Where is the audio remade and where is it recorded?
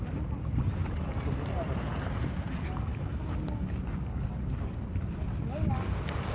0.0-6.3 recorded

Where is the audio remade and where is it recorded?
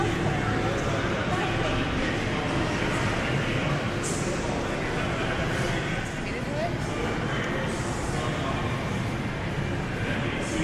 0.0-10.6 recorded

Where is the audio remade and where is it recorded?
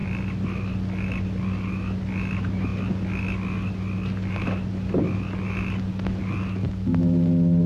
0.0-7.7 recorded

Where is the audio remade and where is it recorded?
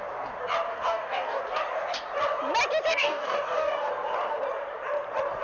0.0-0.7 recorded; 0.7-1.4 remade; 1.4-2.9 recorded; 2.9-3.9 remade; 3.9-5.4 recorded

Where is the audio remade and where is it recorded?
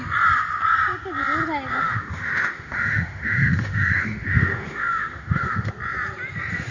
0.0-1.7 recorded; 1.7-5.7 remade; 5.7-6.7 recorded